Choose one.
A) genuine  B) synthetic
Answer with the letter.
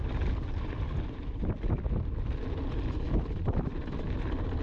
A